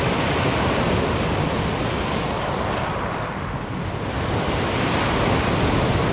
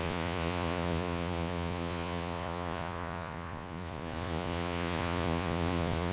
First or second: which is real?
first